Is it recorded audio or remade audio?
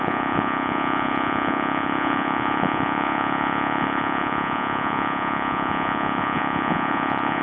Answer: remade